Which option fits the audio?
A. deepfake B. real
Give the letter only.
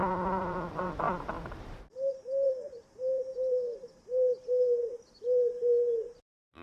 A